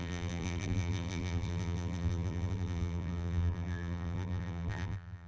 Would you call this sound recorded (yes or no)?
no